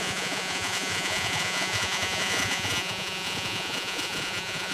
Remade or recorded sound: remade